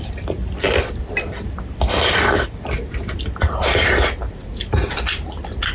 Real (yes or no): yes